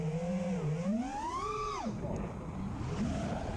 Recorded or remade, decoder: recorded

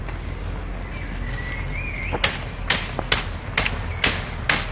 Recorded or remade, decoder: recorded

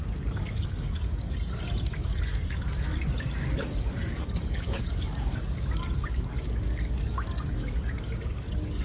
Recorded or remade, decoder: remade, codec, DAC